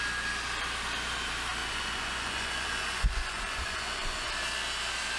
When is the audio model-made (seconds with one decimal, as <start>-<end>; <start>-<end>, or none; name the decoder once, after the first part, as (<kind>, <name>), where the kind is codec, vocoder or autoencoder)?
1.6-4.3 (vocoder, Vocos)